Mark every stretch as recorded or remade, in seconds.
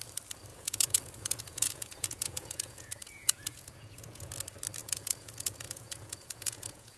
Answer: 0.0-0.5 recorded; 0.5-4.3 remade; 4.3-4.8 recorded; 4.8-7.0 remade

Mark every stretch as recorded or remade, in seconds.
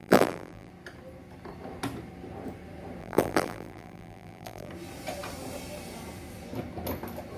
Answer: 0.0-0.7 remade; 0.7-3.0 recorded; 3.0-4.7 remade; 4.7-7.4 recorded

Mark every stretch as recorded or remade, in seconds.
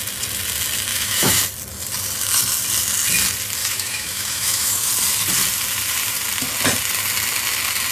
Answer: 0.0-0.9 recorded; 0.9-1.4 remade; 1.4-3.6 recorded; 3.6-4.9 remade; 4.9-7.9 recorded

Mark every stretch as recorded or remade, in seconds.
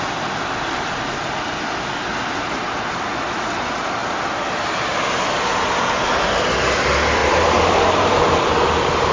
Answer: 0.0-7.2 recorded; 7.2-8.5 remade; 8.5-9.1 recorded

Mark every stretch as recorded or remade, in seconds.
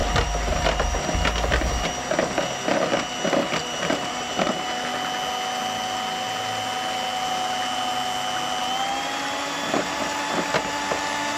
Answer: 0.0-1.0 remade; 1.0-3.6 recorded; 3.6-4.8 remade; 4.8-11.4 recorded